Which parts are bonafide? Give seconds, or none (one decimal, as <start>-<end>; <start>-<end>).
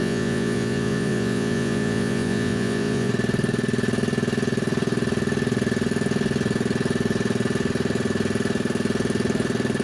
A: 3.1-9.8